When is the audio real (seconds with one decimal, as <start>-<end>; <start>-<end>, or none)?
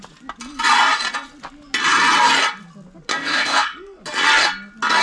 0.0-3.1; 4.0-5.0